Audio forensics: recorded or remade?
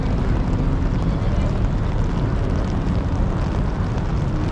recorded